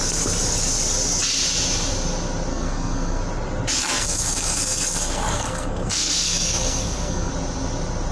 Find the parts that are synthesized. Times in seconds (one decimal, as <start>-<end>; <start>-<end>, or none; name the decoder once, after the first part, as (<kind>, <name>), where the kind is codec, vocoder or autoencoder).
2.5-3.2 (codec, SNAC); 3.8-7.3